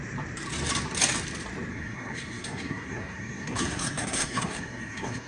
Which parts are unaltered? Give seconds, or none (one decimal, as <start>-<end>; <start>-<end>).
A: 0.0-1.7